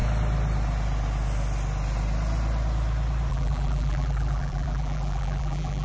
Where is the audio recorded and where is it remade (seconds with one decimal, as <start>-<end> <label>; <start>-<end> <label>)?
0.0-3.3 recorded; 3.3-5.8 remade